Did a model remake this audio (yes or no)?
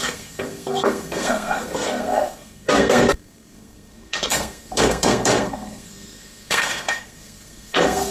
yes